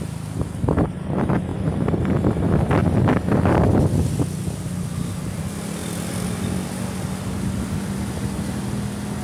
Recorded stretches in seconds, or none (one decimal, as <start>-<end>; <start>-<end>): 0.0-9.2